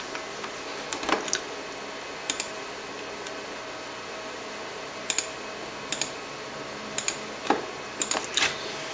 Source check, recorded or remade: recorded